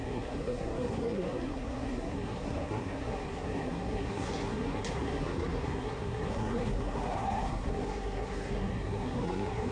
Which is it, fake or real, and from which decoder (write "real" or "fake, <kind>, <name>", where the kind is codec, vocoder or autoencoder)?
fake, codec, SNAC